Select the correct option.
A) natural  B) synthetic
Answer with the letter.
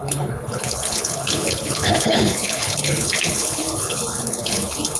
B